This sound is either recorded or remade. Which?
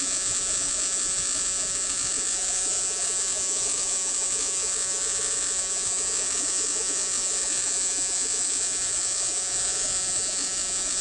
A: remade